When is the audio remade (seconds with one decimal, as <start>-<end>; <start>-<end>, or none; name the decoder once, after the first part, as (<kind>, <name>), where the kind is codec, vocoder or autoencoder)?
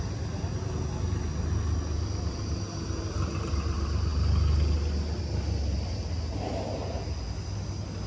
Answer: none